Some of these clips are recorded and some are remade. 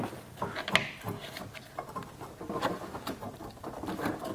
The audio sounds recorded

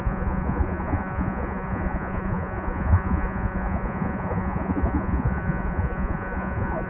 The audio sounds remade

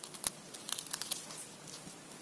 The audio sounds recorded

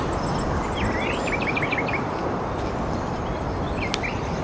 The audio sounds recorded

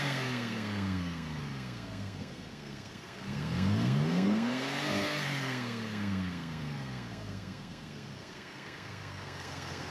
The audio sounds remade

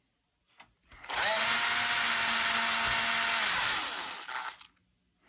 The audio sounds recorded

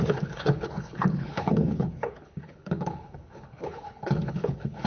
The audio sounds remade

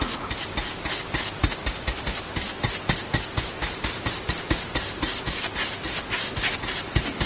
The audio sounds recorded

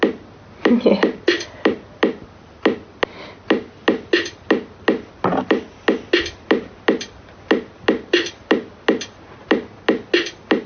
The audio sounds recorded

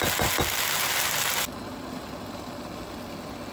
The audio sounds recorded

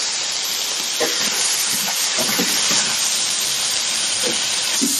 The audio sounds remade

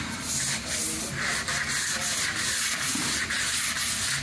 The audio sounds recorded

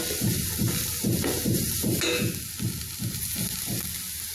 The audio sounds recorded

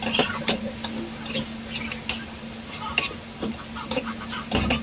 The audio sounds recorded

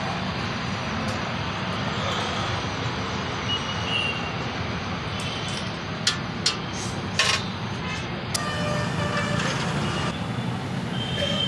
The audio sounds recorded